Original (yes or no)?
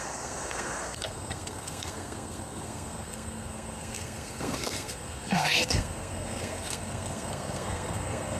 no